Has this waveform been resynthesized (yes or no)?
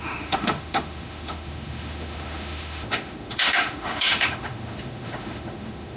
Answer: yes